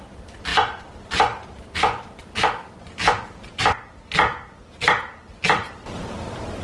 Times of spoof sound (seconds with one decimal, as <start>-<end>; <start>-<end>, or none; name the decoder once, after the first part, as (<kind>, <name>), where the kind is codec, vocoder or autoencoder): none